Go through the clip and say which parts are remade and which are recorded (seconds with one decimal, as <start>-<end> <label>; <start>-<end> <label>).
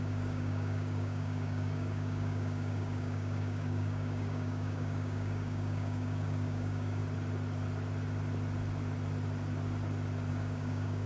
0.0-7.0 remade; 7.0-10.3 recorded; 10.3-11.1 remade